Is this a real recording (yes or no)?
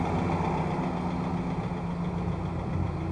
yes